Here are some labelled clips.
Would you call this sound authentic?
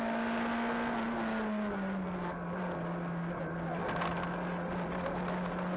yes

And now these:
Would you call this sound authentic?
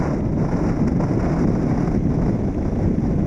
yes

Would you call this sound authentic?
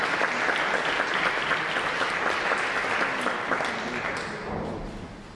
yes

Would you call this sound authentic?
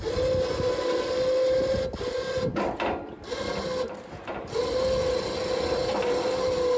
yes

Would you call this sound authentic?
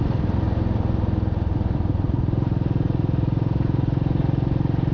yes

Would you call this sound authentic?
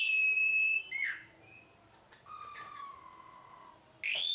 yes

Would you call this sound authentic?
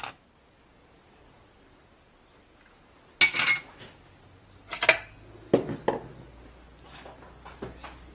yes